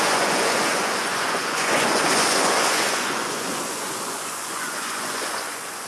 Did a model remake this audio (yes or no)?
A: yes